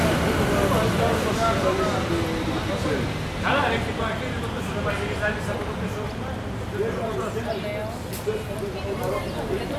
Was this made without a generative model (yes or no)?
yes